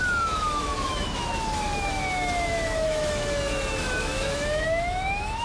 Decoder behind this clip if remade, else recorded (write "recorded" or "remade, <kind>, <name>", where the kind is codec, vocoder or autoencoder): remade, autoencoder, DAC-VAE